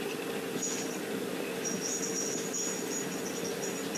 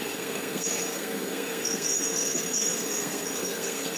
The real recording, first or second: first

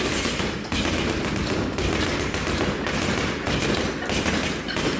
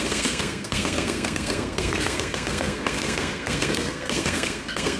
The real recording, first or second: first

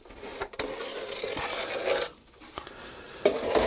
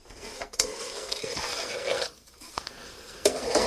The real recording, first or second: first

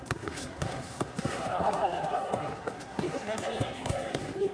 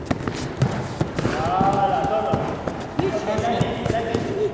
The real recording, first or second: second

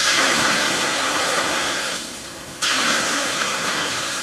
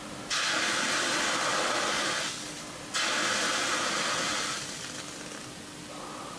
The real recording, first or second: second